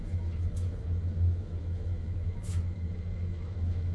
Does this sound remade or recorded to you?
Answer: remade